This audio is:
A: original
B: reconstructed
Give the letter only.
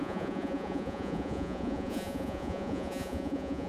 B